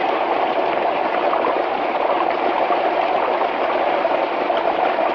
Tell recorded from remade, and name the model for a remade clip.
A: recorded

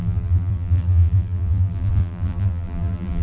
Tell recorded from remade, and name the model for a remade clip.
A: remade, vocoder, BigVGAN v2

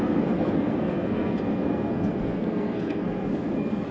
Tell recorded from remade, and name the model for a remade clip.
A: remade, codec, SNAC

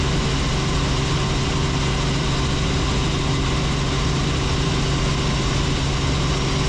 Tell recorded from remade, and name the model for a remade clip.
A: recorded